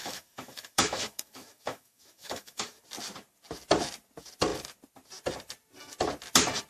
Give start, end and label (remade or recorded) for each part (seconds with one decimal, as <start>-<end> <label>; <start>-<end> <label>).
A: 0.0-2.8 remade; 2.8-6.7 recorded